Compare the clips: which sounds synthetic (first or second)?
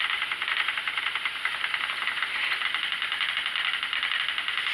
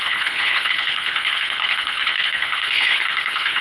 second